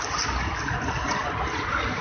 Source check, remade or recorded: recorded